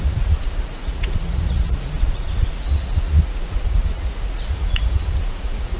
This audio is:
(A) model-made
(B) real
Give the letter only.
A